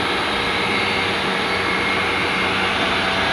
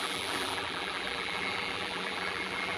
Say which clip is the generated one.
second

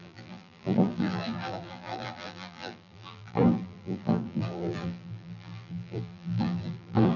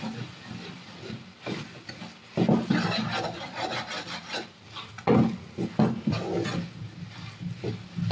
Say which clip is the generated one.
first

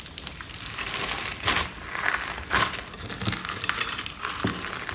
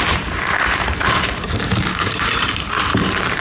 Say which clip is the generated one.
second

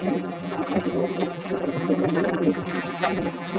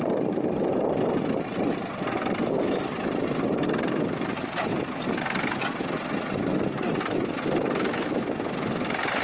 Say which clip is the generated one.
first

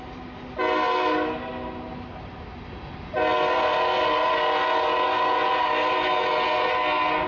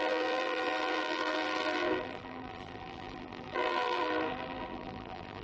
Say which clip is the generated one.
second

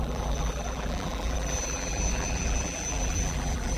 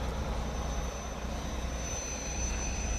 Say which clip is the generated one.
first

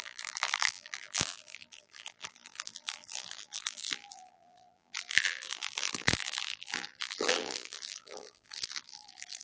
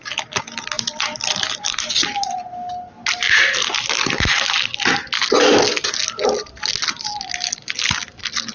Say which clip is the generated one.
first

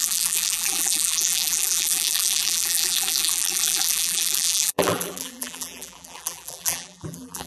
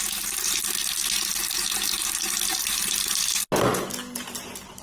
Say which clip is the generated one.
first